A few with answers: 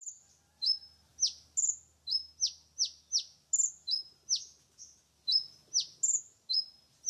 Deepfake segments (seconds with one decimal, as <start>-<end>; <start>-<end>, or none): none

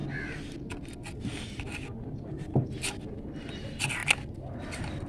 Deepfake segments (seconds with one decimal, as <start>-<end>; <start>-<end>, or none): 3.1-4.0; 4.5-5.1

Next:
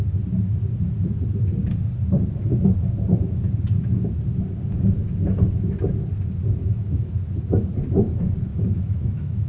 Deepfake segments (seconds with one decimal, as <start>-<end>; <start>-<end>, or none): 6.6-7.1; 8.5-9.5

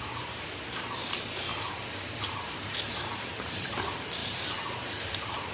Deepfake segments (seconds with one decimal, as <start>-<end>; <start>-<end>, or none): 0.0-1.5; 2.2-5.5

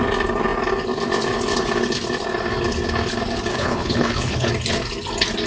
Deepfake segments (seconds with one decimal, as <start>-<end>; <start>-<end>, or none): 3.5-4.5

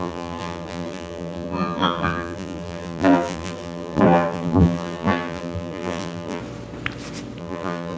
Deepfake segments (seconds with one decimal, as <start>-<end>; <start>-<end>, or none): 0.0-6.4; 7.4-8.0

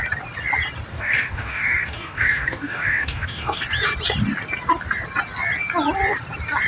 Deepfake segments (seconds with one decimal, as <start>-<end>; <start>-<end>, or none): 0.9-3.6

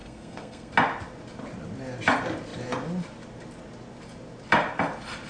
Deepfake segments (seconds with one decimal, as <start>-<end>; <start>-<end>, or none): 0.0-0.7